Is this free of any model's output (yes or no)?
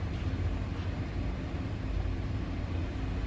yes